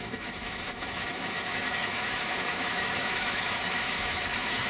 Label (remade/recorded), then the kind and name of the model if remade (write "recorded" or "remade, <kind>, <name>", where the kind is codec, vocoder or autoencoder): remade, autoencoder, DAC-VAE